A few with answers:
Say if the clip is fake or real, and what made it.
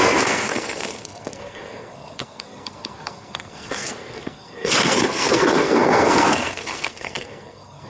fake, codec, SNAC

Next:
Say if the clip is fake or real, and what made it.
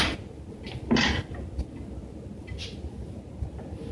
real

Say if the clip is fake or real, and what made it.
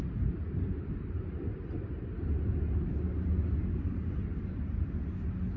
real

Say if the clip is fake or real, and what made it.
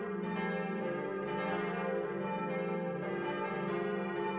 real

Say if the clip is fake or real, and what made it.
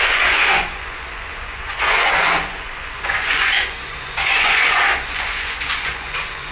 fake, vocoder, Vocos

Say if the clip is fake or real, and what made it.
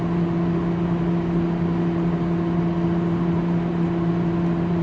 real